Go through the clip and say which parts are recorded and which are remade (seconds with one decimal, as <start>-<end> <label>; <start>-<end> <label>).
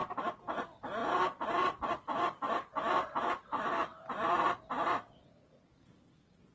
0.0-3.9 recorded; 3.9-4.6 remade; 4.6-6.5 recorded